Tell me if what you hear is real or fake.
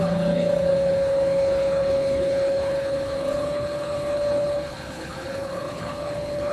fake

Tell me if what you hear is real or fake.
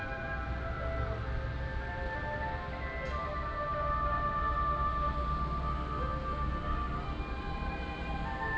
real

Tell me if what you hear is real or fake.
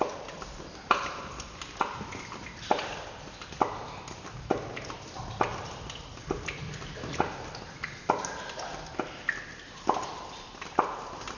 real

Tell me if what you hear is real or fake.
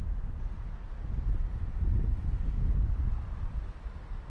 real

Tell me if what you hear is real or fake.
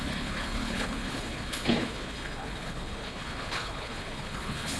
fake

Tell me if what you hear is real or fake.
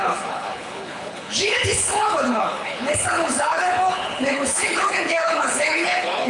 fake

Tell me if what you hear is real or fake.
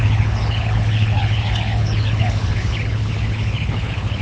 fake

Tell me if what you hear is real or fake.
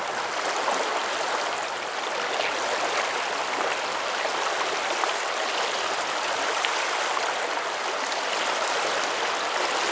real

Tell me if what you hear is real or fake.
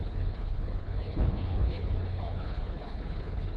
fake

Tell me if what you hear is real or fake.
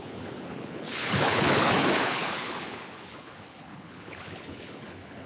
fake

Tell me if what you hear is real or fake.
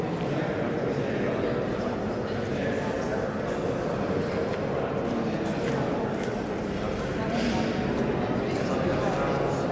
real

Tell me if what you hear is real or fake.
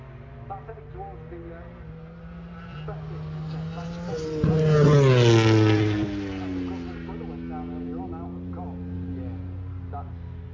real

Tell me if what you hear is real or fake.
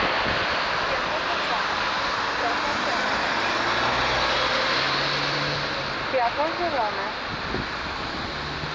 real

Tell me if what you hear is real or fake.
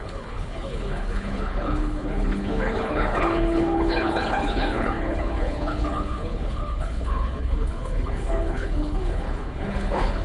fake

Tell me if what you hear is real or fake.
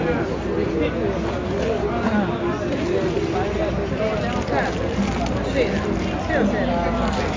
real